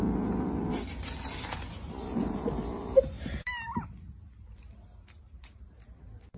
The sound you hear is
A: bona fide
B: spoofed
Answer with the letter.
A